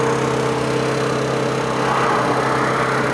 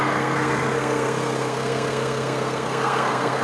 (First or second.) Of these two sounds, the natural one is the first